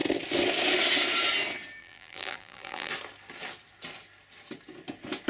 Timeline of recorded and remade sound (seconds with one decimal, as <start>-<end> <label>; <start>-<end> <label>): 0.0-1.8 recorded; 1.8-2.9 remade; 2.9-5.3 recorded